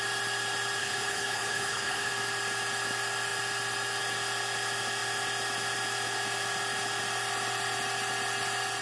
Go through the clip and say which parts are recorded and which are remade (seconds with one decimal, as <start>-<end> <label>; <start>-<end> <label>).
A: 0.0-0.8 recorded; 0.8-2.1 remade; 2.1-8.8 recorded

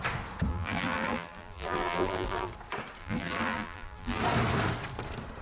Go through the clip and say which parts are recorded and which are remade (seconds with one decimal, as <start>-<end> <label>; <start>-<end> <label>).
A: 0.0-0.5 recorded; 0.5-2.5 remade; 2.5-3.0 recorded; 3.0-4.2 remade; 4.2-5.4 recorded

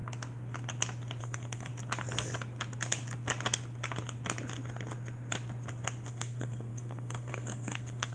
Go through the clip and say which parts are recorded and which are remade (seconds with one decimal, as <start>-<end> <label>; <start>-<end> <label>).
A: 0.0-1.2 recorded; 1.2-1.7 remade; 1.7-6.1 recorded; 6.1-8.1 remade

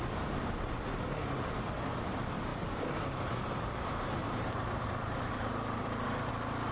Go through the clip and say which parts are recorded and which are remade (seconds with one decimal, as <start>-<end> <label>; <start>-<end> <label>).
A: 0.0-4.2 recorded; 4.2-6.3 remade; 6.3-6.7 recorded

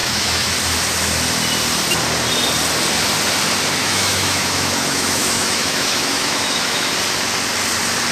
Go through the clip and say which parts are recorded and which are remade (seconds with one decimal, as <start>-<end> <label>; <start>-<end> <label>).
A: 0.0-0.5 remade; 0.5-3.8 recorded; 3.8-6.9 remade; 6.9-8.1 recorded

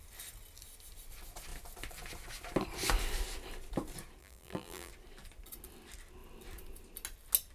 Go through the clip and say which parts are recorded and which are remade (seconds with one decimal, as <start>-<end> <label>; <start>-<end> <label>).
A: 0.0-4.2 recorded; 4.2-4.9 remade; 4.9-7.5 recorded

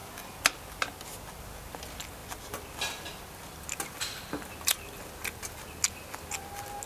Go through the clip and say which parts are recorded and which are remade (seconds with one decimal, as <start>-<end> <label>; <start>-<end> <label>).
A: 0.0-6.9 recorded